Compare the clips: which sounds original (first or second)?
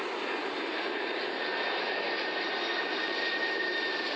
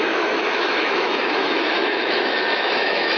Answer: first